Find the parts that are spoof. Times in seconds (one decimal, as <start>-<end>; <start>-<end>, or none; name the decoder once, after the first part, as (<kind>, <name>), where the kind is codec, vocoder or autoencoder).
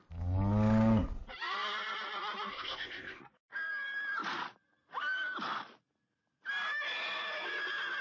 2.5-3.2 (codec, ZipCodec)